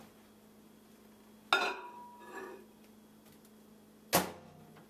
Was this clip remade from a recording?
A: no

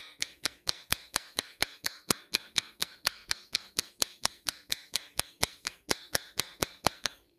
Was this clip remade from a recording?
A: yes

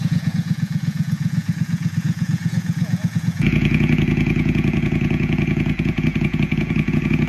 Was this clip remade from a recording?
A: yes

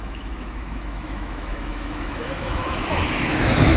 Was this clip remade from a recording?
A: yes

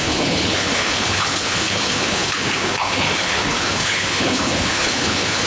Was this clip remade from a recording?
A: yes